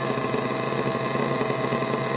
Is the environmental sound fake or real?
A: real